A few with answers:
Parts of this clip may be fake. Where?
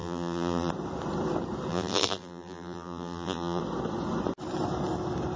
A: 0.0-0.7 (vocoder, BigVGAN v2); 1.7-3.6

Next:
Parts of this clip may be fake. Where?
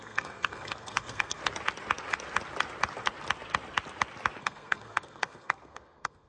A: 0.0-1.4 (codec, SNAC); 4.4-6.3